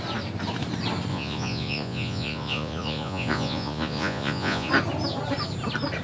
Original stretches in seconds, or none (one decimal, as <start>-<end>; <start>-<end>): 0.0-1.1; 4.7-6.0